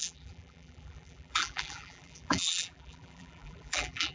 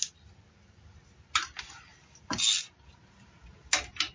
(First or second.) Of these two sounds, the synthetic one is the first